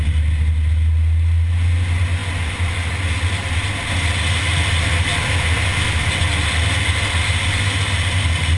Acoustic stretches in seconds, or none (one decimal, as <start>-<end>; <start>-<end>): 0.0-8.6